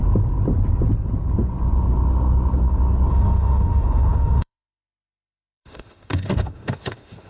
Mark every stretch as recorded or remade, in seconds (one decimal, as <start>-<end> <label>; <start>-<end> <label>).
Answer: 0.0-3.1 recorded; 3.1-7.3 remade